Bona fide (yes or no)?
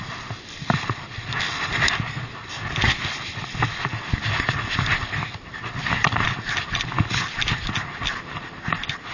yes